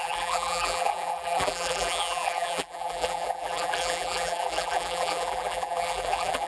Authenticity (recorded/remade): remade